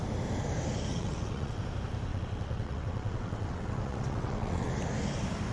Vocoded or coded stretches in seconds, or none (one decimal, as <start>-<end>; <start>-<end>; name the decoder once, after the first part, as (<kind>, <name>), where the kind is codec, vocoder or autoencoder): 0.9-1.6 (vocoder, WaveNeXt); 2.1-4.7